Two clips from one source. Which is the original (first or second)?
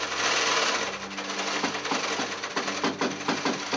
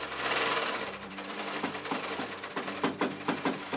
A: first